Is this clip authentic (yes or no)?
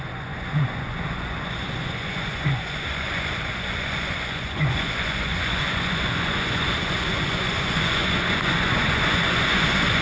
no